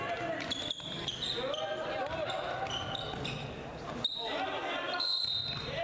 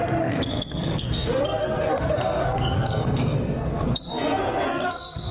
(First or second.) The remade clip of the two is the second